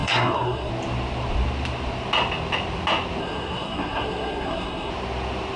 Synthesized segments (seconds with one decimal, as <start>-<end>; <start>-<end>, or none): 0.0-0.7; 3.2-4.9